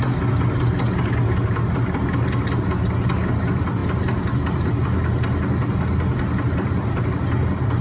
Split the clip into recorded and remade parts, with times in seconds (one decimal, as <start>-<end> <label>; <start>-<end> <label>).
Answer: 0.0-7.8 recorded